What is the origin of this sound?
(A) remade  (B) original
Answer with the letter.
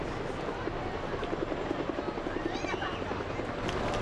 B